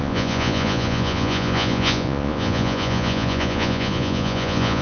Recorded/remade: remade